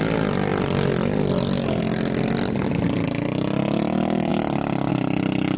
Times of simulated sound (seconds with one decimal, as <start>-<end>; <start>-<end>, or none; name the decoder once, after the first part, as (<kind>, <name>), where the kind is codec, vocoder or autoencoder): none